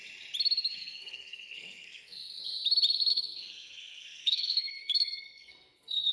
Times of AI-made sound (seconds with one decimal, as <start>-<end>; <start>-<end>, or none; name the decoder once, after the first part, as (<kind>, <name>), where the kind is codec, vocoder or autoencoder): 0.8-2.4 (codec, SNAC); 3.1-6.1